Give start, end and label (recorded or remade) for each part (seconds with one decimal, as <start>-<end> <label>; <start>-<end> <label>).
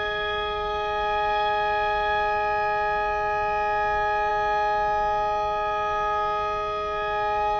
0.0-7.6 recorded